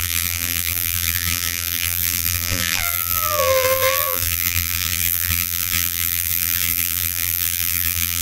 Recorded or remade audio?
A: remade